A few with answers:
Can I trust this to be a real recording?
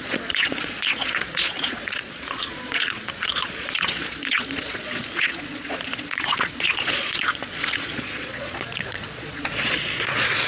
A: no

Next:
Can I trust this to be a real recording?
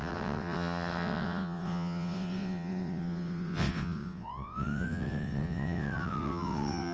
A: no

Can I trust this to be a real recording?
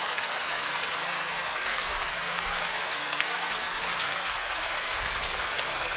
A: no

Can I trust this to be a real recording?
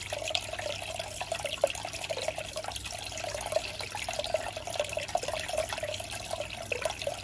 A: yes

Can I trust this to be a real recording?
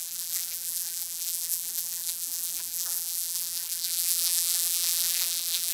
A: no